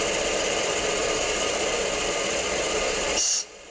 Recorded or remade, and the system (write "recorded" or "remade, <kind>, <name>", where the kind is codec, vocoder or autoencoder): remade, vocoder, BigVGAN v2